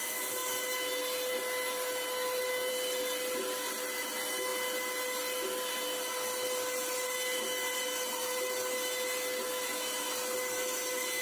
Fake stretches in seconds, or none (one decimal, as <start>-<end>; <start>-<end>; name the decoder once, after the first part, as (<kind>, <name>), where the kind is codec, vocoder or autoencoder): none